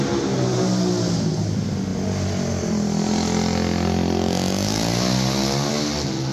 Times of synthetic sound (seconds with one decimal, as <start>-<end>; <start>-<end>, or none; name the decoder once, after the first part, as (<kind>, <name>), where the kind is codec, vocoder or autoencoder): none